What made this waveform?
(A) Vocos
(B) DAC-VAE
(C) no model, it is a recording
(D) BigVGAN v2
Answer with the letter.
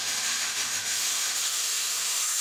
B